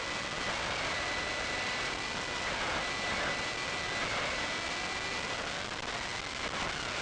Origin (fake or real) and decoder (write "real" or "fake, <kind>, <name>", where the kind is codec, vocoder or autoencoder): real